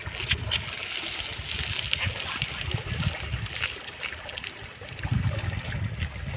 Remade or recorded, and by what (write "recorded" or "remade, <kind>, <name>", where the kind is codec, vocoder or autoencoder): recorded